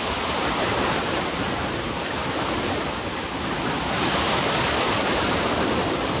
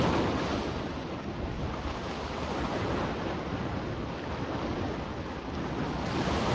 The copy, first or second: first